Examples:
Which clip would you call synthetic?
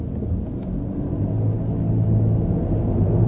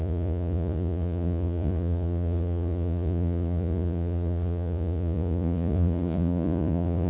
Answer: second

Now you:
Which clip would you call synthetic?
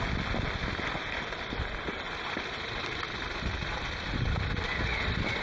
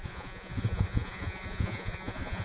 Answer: second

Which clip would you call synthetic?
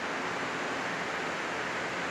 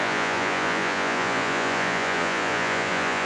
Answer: second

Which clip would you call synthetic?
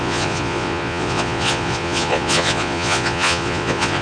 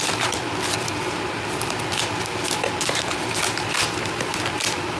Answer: first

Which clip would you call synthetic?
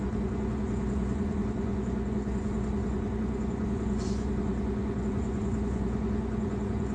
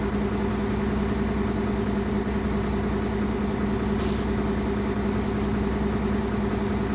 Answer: first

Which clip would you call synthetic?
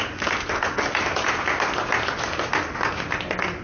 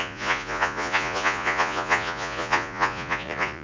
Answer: second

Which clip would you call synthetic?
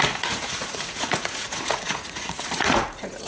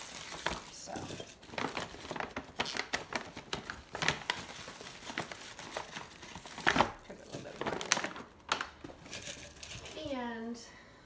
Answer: first